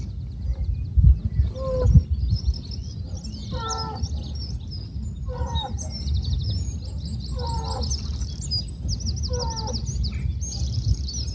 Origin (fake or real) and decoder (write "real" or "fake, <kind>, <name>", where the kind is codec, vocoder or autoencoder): real